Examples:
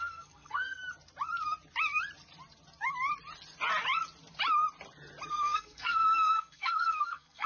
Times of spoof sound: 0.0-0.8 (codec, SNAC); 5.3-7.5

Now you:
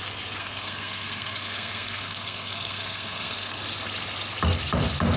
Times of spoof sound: 0.4-3.5 (codec, SNAC)

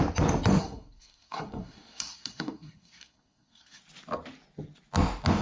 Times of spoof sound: 0.6-3.8 (codec, SNAC)

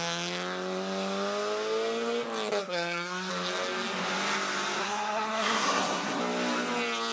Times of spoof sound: 2.6-3.3 (codec, SNAC); 4.8-6.2

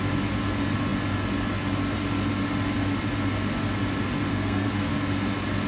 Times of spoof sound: 4.3-4.9 (codec, SNAC)

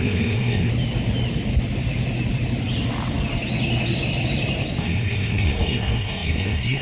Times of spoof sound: 0.0-0.7 (codec, SNAC); 4.8-6.8

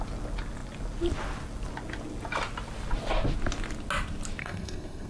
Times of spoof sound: 4.4-5.1 (codec, SNAC)